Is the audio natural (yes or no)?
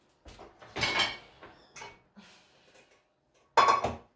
yes